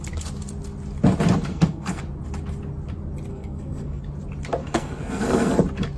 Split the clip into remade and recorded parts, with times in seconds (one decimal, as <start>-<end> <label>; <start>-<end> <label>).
0.0-1.5 recorded; 1.5-2.0 remade; 2.0-3.3 recorded; 3.3-4.0 remade; 4.0-4.6 recorded; 4.6-5.5 remade; 5.5-6.0 recorded